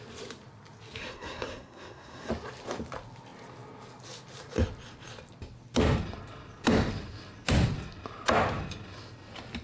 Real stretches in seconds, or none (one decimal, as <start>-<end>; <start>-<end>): 0.0-1.0; 2.3-9.6